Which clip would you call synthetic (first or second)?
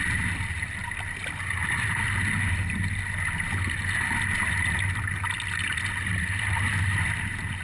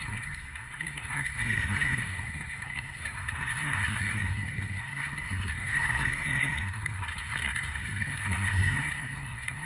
second